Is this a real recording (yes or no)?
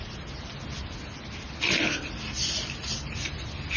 yes